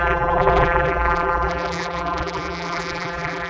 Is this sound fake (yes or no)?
yes